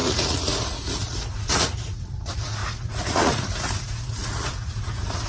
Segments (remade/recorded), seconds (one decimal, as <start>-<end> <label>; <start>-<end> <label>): 0.0-5.3 remade